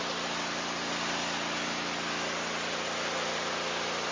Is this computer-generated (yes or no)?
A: no